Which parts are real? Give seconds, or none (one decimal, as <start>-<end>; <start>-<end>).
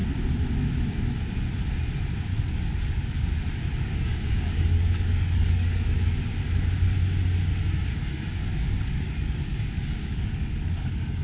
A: 0.0-2.3; 5.9-8.0